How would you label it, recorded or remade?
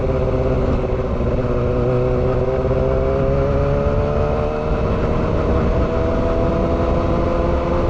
recorded